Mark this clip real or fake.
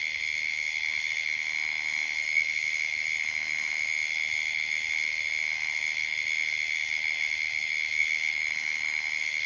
fake